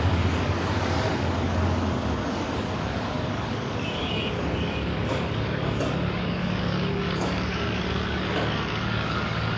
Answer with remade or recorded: remade